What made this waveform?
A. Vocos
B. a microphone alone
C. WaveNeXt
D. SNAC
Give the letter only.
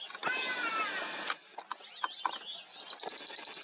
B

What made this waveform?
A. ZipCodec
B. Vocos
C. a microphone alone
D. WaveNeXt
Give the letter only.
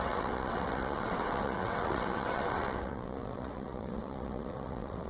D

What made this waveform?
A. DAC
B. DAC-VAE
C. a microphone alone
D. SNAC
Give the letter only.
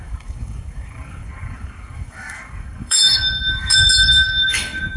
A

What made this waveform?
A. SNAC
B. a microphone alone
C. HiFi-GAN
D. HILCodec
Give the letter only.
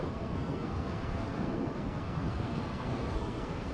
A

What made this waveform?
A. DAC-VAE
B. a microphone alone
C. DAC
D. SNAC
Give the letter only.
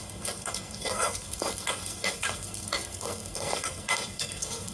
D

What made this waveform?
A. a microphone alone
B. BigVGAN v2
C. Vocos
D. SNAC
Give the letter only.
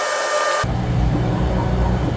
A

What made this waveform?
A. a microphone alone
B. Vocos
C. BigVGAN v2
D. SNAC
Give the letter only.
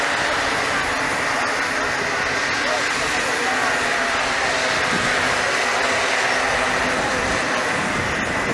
A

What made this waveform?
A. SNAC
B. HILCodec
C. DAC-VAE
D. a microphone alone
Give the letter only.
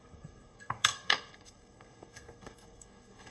A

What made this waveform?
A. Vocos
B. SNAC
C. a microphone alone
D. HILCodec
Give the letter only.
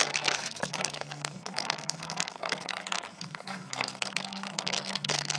B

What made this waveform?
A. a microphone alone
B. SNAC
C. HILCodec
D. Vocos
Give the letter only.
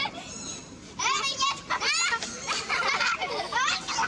A